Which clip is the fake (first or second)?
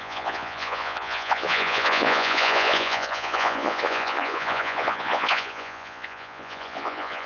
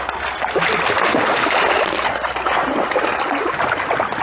first